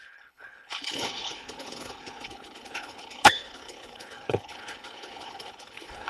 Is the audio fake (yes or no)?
yes